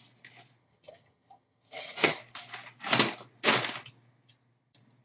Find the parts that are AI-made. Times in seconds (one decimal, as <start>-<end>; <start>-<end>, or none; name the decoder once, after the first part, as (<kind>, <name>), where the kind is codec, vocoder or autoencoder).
0.6-2.2 (vocoder, HiFi-GAN)